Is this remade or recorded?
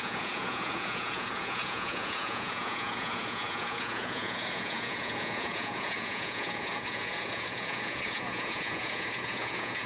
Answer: remade